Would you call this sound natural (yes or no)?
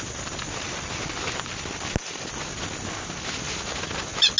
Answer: yes